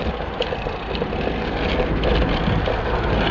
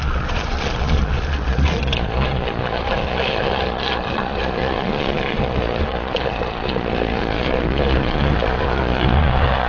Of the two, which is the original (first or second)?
first